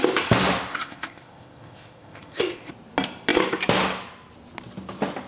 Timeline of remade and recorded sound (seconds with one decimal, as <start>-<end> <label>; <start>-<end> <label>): 0.0-0.7 recorded; 0.7-2.7 remade; 2.7-5.3 recorded